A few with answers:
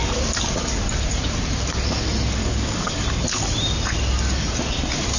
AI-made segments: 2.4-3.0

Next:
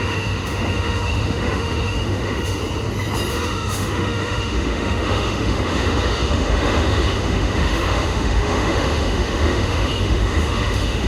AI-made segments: 0.0-2.6; 3.3-11.1

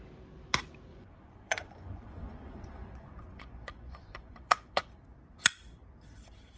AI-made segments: 0.9-4.9

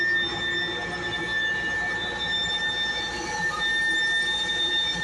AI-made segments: none

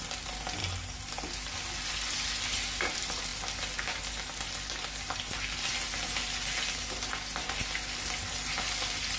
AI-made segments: none